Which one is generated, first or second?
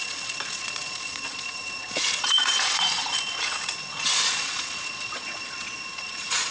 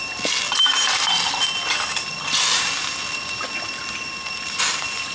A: first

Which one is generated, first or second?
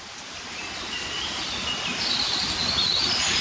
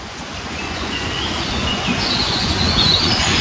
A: second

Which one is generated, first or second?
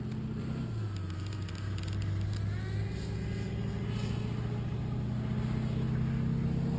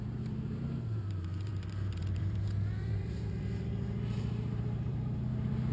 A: second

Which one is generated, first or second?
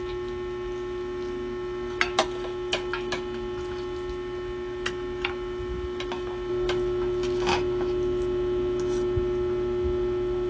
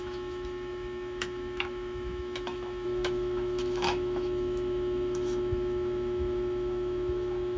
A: second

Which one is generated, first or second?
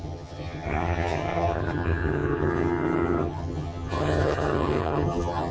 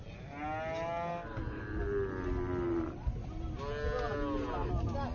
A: first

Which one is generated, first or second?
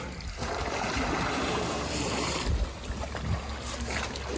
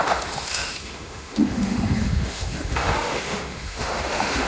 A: second